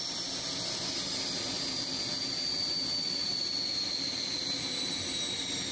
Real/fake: real